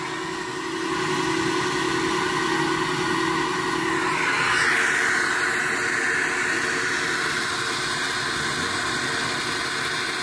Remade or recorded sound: recorded